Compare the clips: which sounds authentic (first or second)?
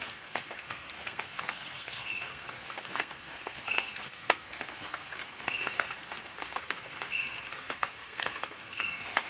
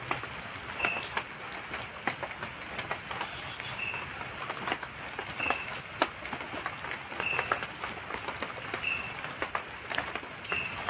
second